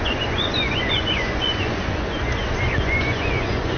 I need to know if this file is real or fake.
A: fake